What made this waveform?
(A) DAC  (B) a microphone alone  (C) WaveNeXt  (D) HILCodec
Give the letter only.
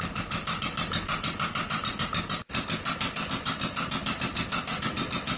B